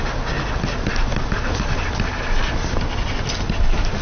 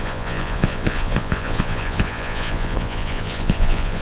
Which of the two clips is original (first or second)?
first